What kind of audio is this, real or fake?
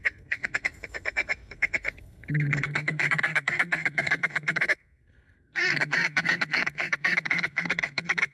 fake